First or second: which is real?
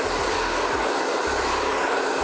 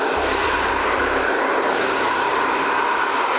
first